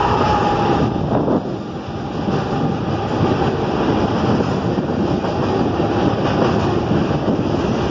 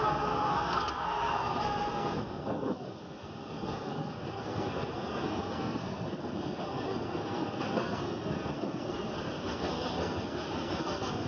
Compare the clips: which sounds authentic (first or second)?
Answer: first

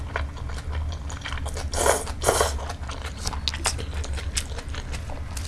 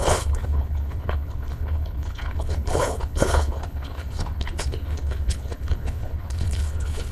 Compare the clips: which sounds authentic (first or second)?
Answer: first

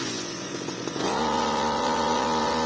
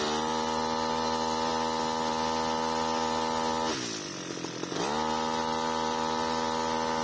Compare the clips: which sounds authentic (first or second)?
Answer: second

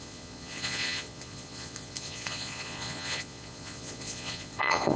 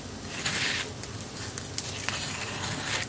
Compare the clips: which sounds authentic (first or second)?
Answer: second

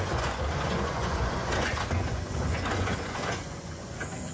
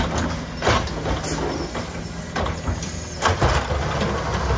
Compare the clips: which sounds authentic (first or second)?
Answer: second